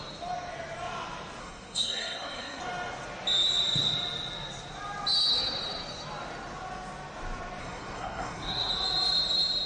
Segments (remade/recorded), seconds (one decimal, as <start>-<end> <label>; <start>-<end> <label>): 0.0-1.4 recorded; 1.4-2.6 remade; 2.6-7.6 recorded; 7.6-8.7 remade; 8.7-9.7 recorded